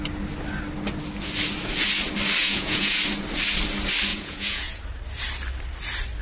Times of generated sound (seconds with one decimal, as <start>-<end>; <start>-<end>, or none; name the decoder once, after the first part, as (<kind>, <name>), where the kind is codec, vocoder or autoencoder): 2.4-3.0 (vocoder, Vocos); 4.1-4.8